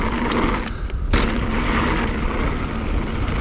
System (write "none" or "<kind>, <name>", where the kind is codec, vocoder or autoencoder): none